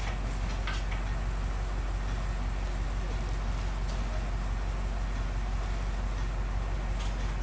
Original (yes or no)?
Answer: yes